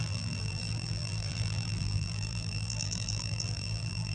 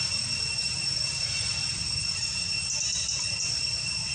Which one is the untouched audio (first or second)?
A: second